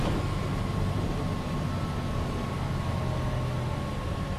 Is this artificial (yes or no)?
no